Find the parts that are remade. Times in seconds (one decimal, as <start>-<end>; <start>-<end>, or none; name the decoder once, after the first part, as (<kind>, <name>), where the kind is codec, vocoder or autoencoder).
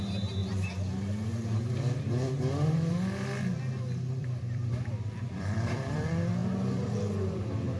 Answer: 4.2-5.9 (vocoder, BigVGAN v2); 6.4-7.1